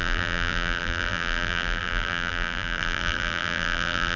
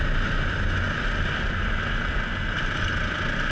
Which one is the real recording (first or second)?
second